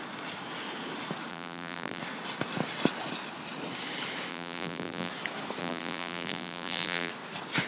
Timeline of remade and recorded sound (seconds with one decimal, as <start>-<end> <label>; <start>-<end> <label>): 0.0-1.3 recorded; 1.3-2.0 remade; 2.0-4.3 recorded; 4.3-5.1 remade; 5.1-5.6 recorded; 5.6-7.1 remade; 7.1-7.7 recorded